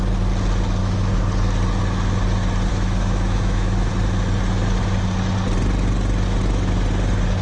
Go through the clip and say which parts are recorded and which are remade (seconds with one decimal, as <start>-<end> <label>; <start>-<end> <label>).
0.0-0.8 recorded; 0.8-1.3 remade; 1.3-2.7 recorded; 2.7-3.9 remade; 3.9-7.4 recorded